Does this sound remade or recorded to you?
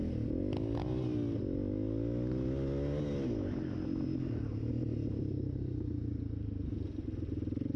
recorded